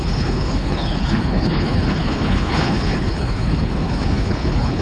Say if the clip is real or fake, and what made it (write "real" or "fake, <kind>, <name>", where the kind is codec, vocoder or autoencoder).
fake, codec, HILCodec